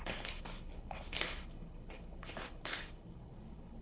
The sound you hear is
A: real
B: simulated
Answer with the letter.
B